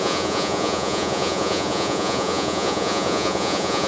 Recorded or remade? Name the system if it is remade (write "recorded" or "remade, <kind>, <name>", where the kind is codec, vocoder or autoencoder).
remade, vocoder, Vocos